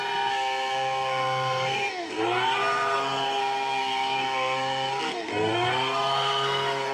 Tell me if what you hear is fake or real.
fake